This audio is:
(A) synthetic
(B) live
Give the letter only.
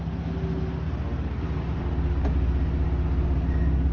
B